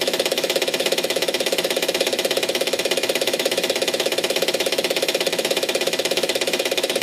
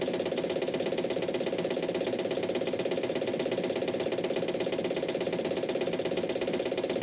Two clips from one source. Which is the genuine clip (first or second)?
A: second